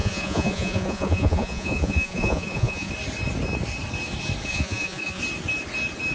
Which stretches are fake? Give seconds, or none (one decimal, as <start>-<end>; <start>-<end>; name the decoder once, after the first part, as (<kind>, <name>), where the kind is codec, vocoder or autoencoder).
0.0-2.9 (vocoder, Vocos); 4.5-5.2